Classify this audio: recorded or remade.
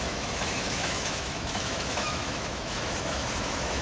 remade